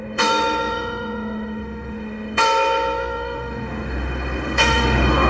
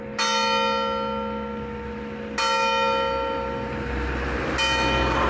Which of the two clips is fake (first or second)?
first